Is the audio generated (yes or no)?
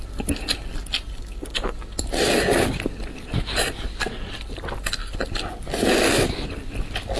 no